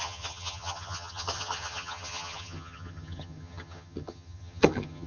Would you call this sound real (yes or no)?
no